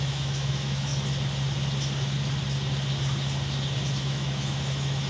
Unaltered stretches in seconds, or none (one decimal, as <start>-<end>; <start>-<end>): 0.9-4.0